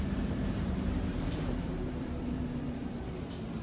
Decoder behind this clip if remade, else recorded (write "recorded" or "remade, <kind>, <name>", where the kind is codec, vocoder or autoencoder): remade, vocoder, BigVGAN v2